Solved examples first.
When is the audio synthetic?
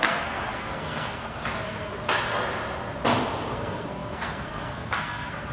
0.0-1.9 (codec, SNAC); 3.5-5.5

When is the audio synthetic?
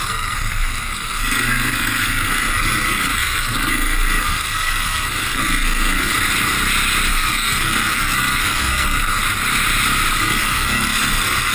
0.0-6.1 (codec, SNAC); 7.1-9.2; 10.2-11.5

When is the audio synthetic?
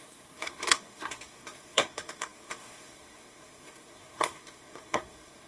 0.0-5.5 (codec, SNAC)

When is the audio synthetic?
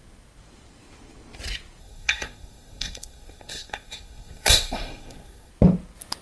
1.8-5.5 (codec, SNAC)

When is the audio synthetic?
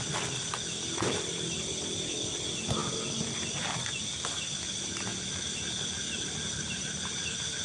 none